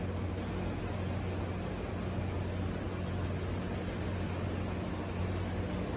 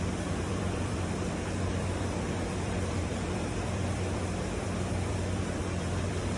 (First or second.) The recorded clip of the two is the first